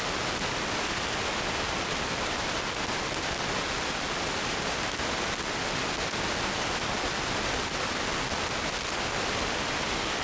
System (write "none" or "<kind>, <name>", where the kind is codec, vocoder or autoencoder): none